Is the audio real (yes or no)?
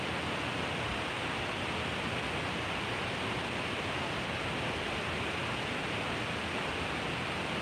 yes